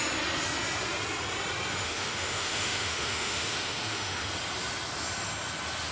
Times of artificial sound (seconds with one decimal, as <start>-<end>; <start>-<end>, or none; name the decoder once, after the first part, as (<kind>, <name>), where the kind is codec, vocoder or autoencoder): 1.7-4.3 (autoencoder, DAC-VAE)